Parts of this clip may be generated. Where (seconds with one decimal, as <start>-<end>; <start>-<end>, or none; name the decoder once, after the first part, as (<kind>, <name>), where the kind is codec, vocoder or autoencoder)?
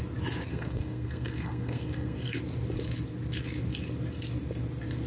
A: 0.5-2.4 (codec, SNAC)